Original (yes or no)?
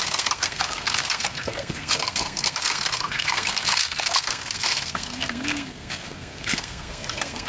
no